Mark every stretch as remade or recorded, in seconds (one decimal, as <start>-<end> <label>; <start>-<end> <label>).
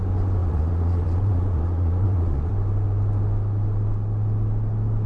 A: 0.0-0.4 recorded; 0.4-2.5 remade; 2.5-5.1 recorded